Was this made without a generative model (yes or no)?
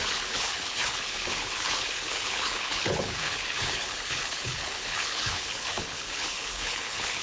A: no